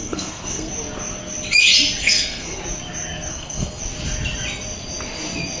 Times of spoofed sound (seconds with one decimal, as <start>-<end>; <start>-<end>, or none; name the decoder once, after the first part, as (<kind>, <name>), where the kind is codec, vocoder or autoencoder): 0.0-0.7 (codec, SNAC); 2.0-2.6; 3.3-3.8